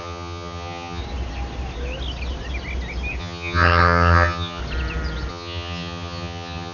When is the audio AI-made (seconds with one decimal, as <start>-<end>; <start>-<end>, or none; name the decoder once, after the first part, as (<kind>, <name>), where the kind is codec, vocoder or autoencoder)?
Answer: 0.0-1.0 (vocoder, HiFi-GAN); 3.2-4.6; 5.3-6.7